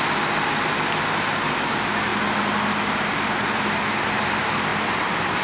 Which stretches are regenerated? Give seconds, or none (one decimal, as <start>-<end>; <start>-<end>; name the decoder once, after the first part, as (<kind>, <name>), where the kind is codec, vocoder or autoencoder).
none